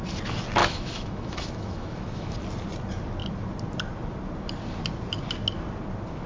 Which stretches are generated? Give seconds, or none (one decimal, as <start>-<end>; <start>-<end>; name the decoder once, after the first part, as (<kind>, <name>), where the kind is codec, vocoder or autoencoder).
0.6-2.3 (autoencoder, DAC-VAE)